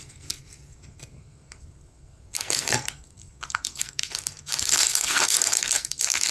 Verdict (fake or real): fake